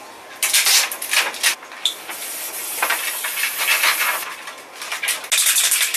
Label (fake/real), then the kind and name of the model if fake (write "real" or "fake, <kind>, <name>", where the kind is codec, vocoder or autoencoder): real